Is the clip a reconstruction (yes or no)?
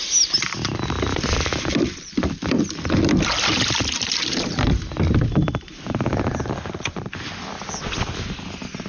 no